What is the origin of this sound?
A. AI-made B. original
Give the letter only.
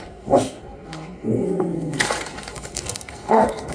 A